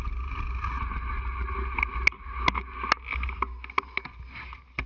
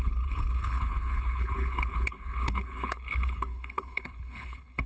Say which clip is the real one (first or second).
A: first